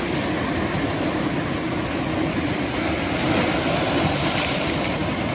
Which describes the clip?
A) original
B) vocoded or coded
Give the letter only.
A